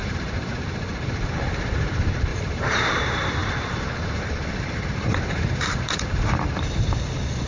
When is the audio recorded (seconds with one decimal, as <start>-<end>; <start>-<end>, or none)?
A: 1.3-2.3; 2.9-3.4; 7.0-7.5